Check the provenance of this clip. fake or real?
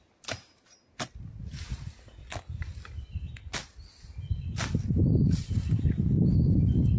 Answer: real